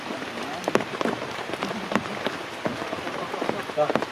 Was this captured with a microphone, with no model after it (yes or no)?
no